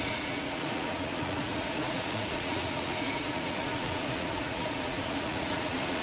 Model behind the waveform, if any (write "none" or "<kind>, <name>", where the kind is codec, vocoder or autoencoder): vocoder, Vocos